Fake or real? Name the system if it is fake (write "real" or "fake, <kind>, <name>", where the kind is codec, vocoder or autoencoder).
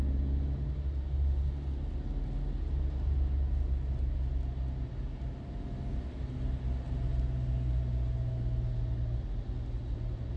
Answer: real